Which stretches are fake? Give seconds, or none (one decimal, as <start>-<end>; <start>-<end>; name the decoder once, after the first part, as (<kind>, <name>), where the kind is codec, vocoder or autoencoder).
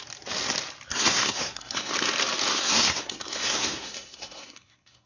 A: 0.9-1.9 (codec, SNAC); 2.5-5.1